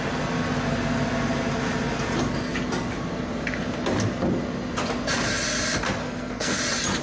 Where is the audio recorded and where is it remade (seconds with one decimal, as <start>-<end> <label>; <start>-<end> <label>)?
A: 0.0-6.0 recorded; 6.0-6.6 remade; 6.6-7.0 recorded